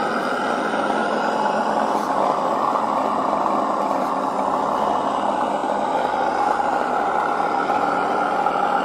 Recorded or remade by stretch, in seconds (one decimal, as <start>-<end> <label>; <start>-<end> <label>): 0.0-1.0 recorded; 1.0-1.6 remade; 1.6-8.8 recorded